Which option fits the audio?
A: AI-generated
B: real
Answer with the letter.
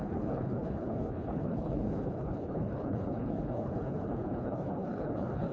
A